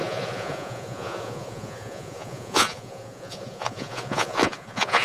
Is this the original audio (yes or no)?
no